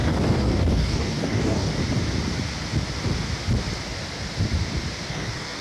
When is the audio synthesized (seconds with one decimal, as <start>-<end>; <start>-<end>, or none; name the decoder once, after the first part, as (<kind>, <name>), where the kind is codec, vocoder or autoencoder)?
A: 0.0-1.7 (codec, DAC); 5.1-5.6

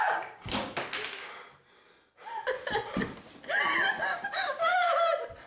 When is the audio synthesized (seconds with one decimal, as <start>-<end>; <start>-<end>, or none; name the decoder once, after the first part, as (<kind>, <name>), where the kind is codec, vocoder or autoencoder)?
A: 0.0-0.7 (codec, DAC); 4.0-4.7

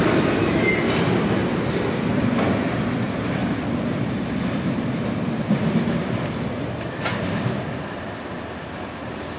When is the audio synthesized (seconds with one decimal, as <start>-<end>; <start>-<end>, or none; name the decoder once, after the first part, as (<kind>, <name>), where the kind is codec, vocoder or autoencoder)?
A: none